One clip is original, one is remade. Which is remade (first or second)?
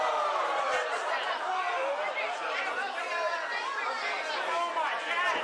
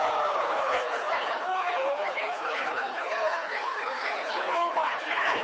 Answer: second